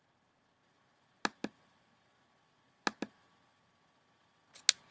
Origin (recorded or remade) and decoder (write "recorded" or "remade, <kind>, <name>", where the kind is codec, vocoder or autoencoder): recorded